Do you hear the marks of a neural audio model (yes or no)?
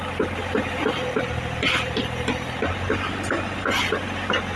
no